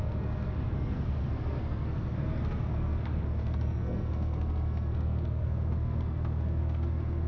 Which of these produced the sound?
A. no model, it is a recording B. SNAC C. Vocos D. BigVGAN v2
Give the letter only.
B